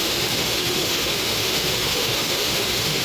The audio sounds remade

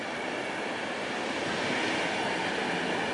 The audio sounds recorded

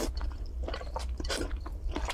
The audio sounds recorded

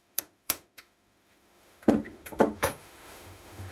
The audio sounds remade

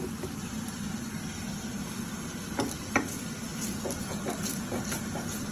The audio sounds recorded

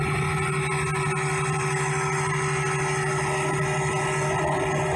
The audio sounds recorded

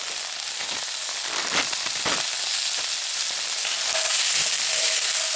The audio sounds recorded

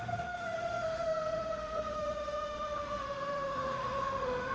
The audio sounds remade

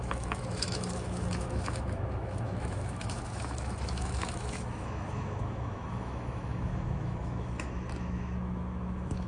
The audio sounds remade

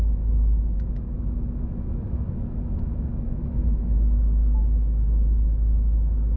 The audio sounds remade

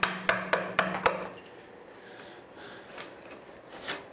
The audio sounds recorded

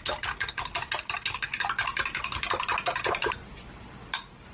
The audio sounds recorded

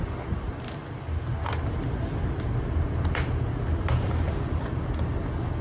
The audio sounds recorded